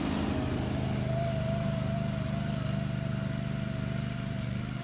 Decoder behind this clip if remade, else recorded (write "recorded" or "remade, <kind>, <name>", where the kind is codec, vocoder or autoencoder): recorded